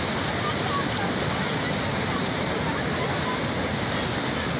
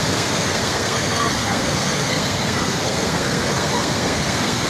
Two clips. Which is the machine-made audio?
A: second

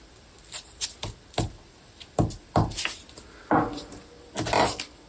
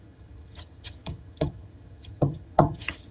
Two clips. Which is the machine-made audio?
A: second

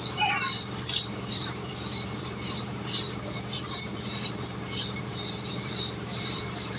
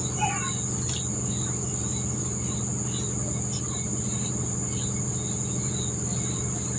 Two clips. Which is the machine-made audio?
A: first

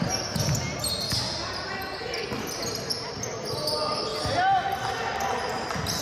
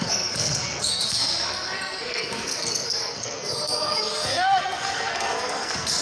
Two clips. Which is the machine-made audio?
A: second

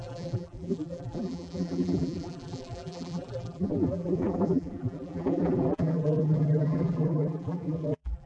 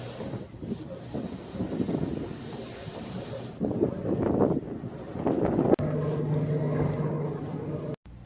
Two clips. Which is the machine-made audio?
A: first